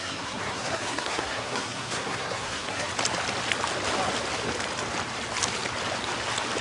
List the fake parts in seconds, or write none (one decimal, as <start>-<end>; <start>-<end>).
0.0-2.9